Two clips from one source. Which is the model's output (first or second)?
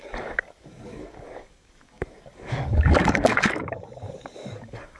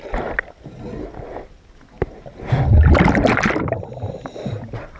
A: first